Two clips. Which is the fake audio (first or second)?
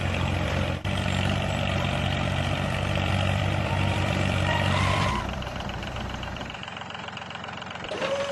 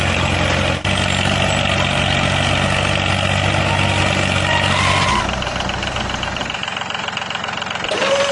first